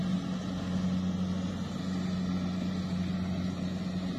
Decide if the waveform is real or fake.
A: real